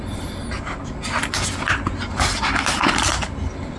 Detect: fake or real real